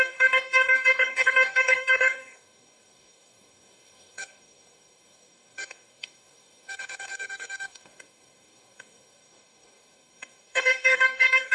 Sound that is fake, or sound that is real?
fake